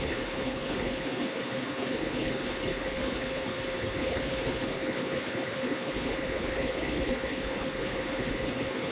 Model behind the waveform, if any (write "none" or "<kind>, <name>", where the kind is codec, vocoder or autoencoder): codec, HILCodec